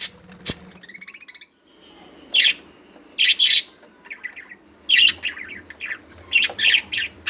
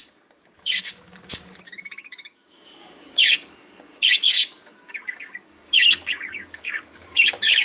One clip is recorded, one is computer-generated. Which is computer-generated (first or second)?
second